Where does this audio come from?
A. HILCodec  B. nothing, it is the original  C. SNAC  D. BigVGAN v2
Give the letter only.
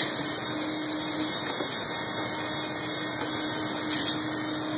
B